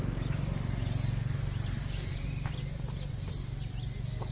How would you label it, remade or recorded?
recorded